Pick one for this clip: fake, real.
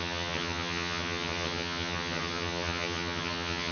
fake